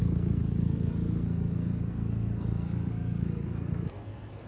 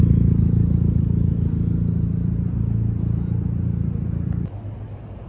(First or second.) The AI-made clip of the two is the first